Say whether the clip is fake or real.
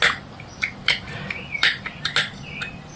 real